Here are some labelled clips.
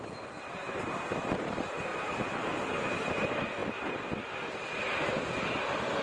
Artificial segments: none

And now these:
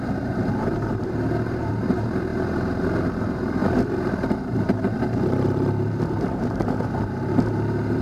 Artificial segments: 0.0-8.0 (vocoder, BigVGAN v2)

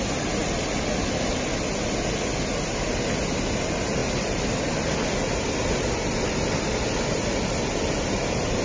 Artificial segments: none

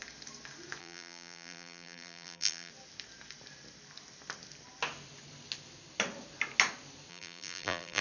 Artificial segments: 0.8-2.7 (vocoder, BigVGAN v2); 7.1-8.0

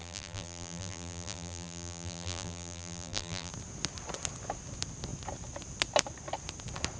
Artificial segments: 0.0-3.5 (vocoder, BigVGAN v2)

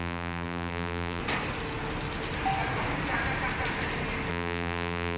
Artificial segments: 0.0-1.2 (vocoder, BigVGAN v2); 4.3-5.2